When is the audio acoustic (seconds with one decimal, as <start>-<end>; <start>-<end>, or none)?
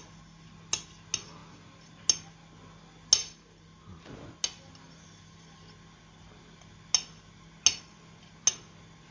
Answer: 0.0-9.1